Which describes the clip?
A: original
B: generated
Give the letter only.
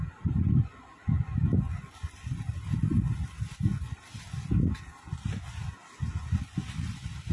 A